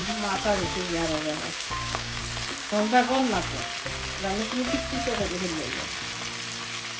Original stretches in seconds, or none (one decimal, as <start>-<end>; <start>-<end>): 2.2-2.6; 3.6-4.4; 5.0-7.0